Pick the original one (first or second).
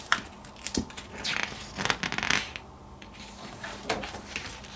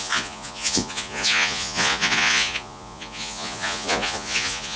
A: first